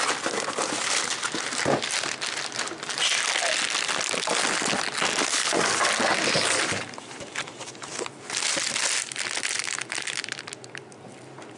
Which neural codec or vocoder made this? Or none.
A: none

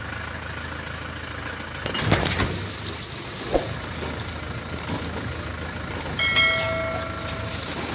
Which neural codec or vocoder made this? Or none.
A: none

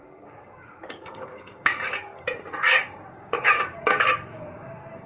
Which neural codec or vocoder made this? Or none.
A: codec, DAC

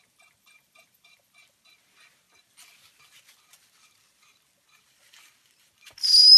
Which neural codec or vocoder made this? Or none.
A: none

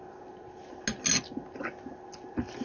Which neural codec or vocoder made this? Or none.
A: none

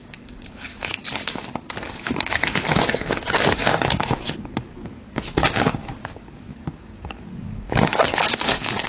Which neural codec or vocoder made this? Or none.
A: codec, DAC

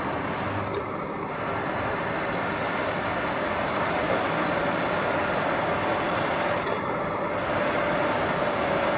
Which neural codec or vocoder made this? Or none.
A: none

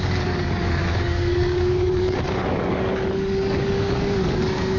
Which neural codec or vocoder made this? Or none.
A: codec, DAC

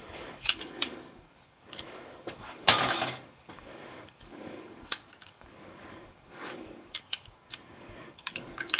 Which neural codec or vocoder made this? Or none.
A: codec, DAC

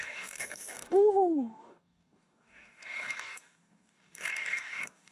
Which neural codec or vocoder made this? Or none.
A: codec, DAC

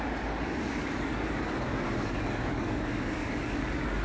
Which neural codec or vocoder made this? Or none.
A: codec, DAC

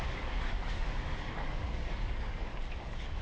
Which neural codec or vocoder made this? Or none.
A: codec, DAC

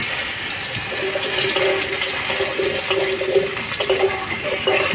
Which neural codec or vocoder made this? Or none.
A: none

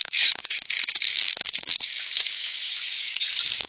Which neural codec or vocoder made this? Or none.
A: codec, DAC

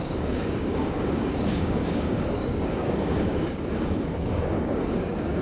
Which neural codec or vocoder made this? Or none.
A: codec, DAC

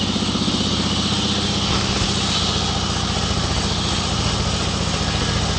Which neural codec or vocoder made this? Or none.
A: none